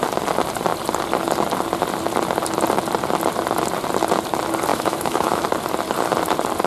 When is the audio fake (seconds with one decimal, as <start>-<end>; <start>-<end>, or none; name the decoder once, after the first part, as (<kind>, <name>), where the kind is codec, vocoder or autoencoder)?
4.7-5.4 (autoencoder, DAC-VAE)

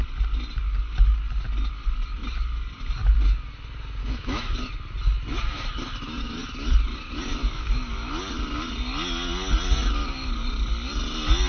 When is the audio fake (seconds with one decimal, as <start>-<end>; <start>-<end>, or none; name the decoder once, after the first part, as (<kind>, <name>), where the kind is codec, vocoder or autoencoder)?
4.0-4.6 (autoencoder, DAC-VAE); 7.4-8.2

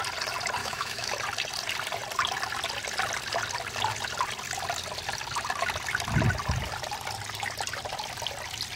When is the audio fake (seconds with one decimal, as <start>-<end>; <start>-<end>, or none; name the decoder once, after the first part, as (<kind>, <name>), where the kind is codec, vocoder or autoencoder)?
0.6-1.1 (autoencoder, DAC-VAE)